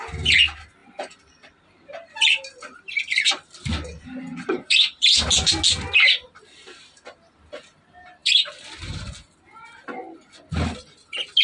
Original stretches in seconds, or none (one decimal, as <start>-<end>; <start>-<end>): 0.0-0.8; 5.5-11.4